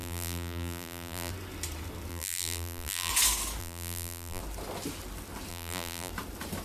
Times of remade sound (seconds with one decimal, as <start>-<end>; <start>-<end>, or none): 0.0-1.3; 2.1-3.1; 3.6-4.4; 5.5-6.1